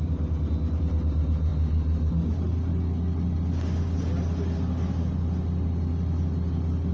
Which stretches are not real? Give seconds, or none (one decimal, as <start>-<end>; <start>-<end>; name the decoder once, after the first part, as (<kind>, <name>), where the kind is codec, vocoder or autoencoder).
none